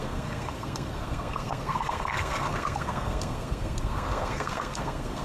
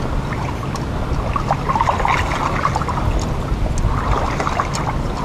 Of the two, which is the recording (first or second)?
second